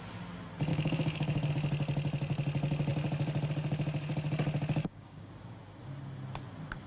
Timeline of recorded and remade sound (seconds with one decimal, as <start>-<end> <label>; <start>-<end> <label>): 0.0-0.7 recorded; 0.7-1.5 remade; 1.5-4.8 recorded; 4.8-5.3 remade; 5.3-6.9 recorded